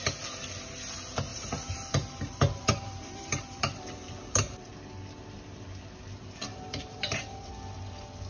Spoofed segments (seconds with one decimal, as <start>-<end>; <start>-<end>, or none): 1.3-4.7; 6.5-7.5